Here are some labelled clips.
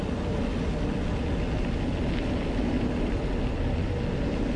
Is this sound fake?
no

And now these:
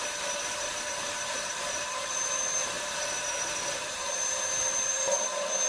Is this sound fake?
yes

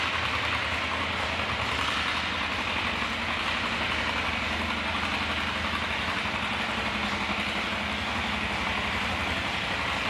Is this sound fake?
no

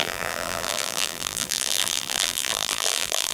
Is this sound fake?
yes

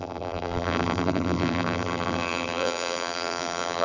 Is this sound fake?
yes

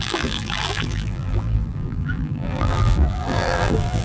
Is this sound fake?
yes